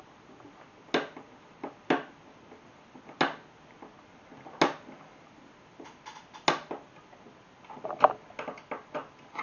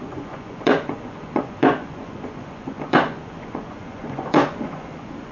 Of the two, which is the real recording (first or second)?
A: first